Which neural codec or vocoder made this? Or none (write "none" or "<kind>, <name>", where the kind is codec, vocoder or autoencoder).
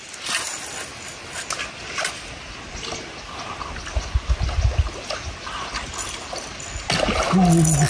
none